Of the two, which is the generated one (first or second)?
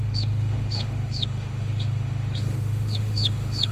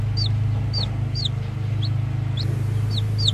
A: first